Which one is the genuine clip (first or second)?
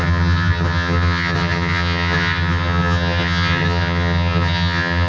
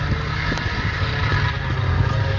second